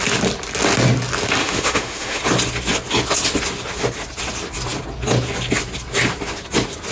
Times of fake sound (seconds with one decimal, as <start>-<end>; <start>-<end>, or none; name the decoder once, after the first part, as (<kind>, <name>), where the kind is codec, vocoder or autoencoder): 1.4-2.2 (autoencoder, DAC-VAE)